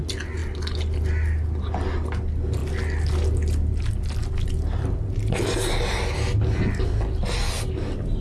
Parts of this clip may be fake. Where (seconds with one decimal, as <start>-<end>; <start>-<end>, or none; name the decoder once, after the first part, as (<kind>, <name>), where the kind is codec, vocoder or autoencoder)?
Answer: none